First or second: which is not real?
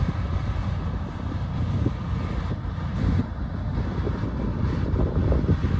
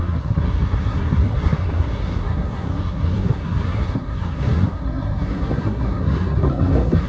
second